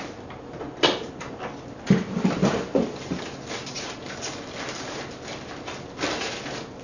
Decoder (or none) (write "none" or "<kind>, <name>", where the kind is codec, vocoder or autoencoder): none